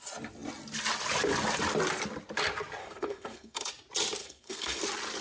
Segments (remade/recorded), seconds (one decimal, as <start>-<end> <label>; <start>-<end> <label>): 0.0-2.8 recorded; 2.8-3.7 remade; 3.7-4.2 recorded; 4.2-4.8 remade; 4.8-5.2 recorded